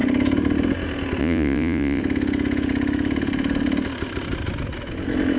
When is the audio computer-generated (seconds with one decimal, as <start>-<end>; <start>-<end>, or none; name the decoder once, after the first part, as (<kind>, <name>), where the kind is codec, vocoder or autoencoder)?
1.2-2.0 (vocoder, Vocos)